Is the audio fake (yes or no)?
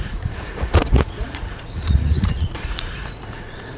yes